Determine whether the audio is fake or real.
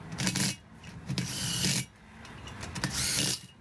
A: real